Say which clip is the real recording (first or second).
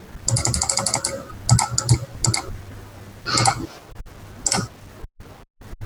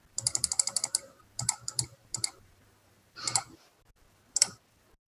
first